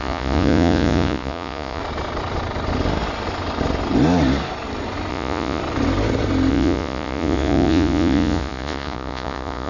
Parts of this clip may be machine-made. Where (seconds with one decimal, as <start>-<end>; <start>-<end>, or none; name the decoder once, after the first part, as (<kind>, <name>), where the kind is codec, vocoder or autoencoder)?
0.0-1.8 (vocoder, Vocos); 5.1-5.6; 6.5-9.7